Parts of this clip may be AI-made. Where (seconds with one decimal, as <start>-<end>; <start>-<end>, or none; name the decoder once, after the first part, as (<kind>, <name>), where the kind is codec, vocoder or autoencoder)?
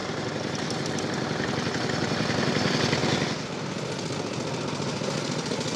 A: 0.0-0.9 (vocoder, BigVGAN v2)